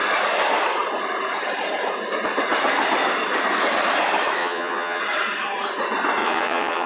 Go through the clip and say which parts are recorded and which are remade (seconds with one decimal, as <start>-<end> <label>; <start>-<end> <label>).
0.0-4.4 recorded; 4.4-5.0 remade; 5.0-6.2 recorded; 6.2-6.9 remade